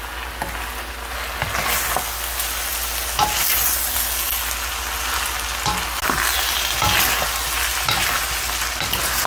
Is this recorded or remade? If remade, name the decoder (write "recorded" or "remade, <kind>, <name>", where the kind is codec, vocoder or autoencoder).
recorded